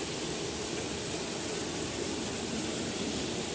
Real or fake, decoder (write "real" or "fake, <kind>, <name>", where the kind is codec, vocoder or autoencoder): real